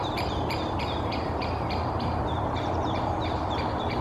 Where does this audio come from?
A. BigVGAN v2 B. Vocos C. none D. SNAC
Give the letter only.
A